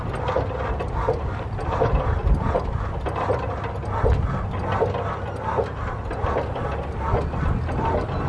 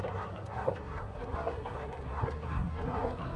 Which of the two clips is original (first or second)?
first